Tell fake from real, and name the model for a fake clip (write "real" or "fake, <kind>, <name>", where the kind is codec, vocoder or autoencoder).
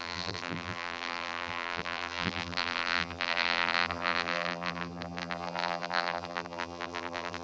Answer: fake, vocoder, BigVGAN v2